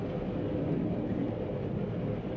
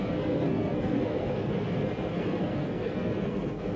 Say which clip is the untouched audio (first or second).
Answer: first